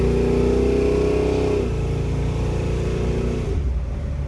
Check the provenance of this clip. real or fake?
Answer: real